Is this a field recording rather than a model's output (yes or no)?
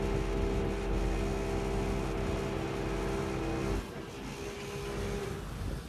yes